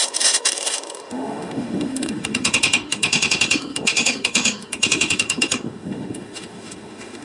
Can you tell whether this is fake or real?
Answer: fake